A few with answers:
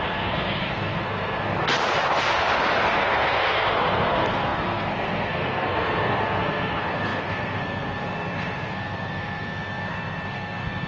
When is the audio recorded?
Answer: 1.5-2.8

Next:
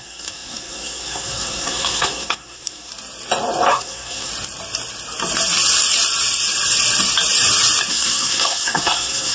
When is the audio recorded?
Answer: 2.9-3.7; 4.3-7.9

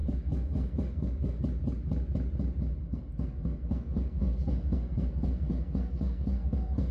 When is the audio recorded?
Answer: 1.4-2.8

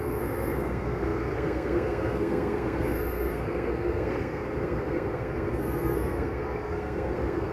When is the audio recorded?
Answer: none

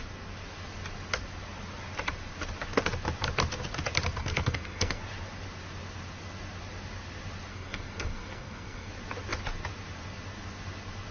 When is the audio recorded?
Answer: 0.0-4.2; 5.0-7.5; 8.9-11.1

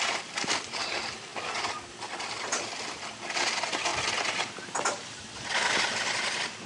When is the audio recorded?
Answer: 0.0-6.7

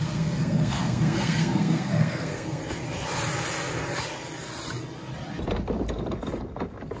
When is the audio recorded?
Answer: 2.6-7.0

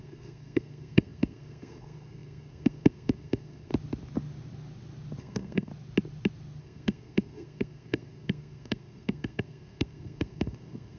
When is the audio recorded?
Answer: 3.7-5.2; 5.7-6.6